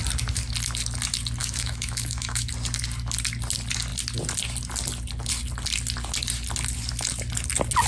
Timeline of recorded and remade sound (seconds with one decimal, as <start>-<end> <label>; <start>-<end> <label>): 0.0-1.4 recorded; 1.4-2.5 remade; 2.5-7.9 recorded